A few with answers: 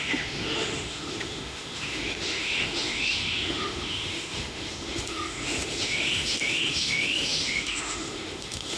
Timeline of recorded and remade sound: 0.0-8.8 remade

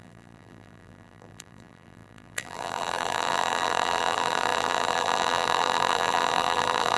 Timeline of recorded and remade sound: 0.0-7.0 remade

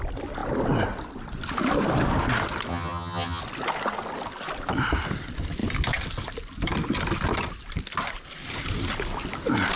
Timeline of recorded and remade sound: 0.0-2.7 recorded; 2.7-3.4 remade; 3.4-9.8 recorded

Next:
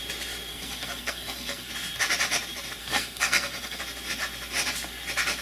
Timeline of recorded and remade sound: 0.0-0.5 recorded; 0.5-1.7 remade; 1.7-2.8 recorded; 2.8-3.8 remade; 3.8-5.4 recorded

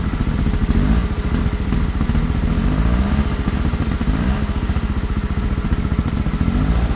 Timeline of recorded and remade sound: 0.0-7.0 recorded

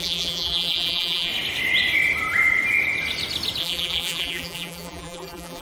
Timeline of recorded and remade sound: 0.0-1.3 remade; 1.3-3.6 recorded; 3.6-5.6 remade